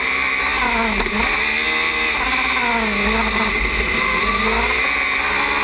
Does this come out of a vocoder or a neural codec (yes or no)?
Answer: no